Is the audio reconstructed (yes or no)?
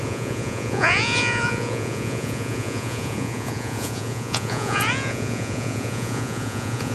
yes